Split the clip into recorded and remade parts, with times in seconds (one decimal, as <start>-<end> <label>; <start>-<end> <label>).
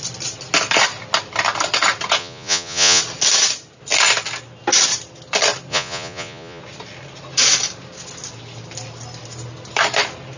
0.0-2.2 recorded; 2.2-3.0 remade; 3.0-5.7 recorded; 5.7-6.6 remade; 6.6-10.4 recorded